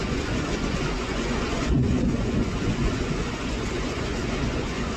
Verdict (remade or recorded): remade